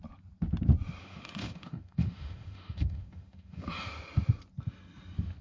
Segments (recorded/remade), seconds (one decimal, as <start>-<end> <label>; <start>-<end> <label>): 0.0-1.0 recorded; 1.0-3.7 remade; 3.7-5.4 recorded